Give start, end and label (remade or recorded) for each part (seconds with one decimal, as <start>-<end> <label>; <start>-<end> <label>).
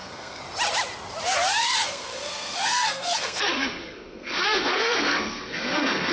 0.0-0.4 remade; 0.4-1.6 recorded; 1.6-6.1 remade